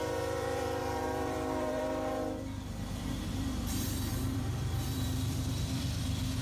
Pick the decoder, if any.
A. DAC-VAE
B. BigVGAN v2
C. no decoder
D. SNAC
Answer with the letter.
B